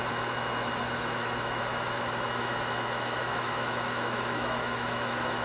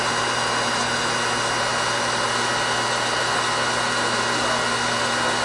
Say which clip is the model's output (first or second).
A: first